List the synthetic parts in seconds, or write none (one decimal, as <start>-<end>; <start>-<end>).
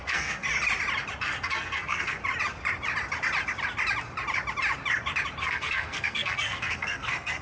0.0-0.5; 1.2-2.2; 5.4-7.4